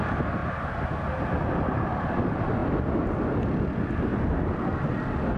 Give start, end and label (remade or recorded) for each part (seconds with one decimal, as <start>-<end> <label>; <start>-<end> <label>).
0.0-5.4 recorded